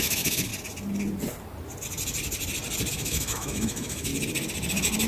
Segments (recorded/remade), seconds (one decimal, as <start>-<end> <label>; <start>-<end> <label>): 0.0-0.5 remade; 0.5-2.9 recorded; 2.9-4.1 remade; 4.1-5.1 recorded